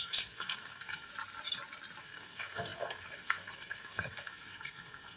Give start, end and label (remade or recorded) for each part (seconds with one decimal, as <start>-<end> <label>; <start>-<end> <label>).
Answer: 0.0-1.1 remade; 1.1-2.0 recorded; 2.0-5.2 remade